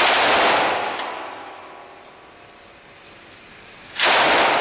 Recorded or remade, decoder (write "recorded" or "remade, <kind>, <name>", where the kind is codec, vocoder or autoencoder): recorded